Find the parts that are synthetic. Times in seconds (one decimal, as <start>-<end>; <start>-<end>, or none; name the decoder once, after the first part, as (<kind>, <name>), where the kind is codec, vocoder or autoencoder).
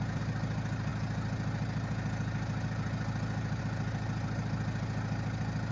none